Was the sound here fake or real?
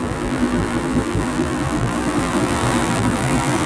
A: fake